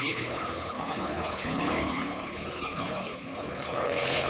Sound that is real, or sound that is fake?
fake